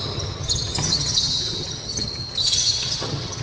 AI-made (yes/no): yes